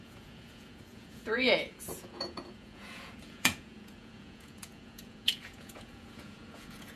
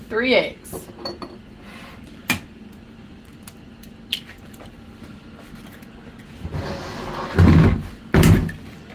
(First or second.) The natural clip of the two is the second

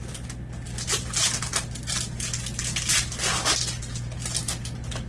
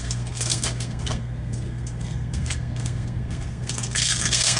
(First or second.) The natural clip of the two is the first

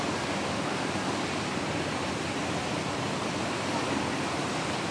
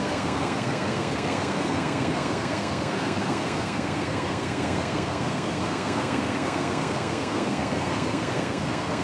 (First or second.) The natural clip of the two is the first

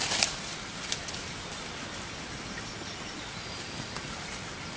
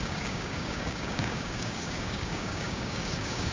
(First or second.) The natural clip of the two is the first